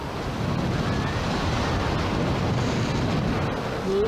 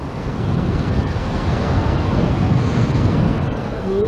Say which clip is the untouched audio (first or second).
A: first